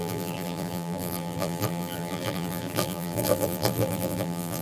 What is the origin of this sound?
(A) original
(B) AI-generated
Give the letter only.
B